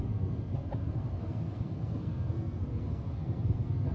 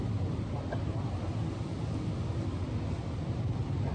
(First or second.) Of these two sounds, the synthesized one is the first